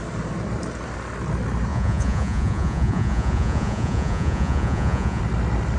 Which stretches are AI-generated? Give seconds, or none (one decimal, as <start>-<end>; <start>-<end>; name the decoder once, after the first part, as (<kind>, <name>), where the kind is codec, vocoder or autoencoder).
1.7-5.2 (vocoder, Vocos)